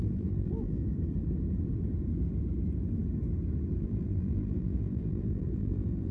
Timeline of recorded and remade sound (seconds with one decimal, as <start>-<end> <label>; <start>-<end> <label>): 0.0-0.8 remade; 0.8-3.8 recorded; 3.8-6.1 remade